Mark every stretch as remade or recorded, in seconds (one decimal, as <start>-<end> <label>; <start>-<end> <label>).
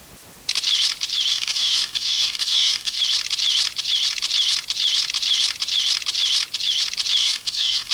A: 0.0-1.3 recorded; 1.3-3.0 remade; 3.0-7.2 recorded; 7.2-7.9 remade